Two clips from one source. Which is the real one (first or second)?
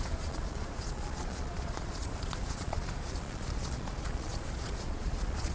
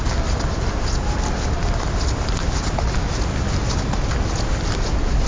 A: second